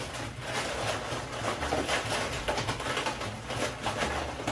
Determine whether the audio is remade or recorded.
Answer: recorded